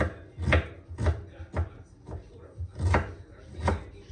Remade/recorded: recorded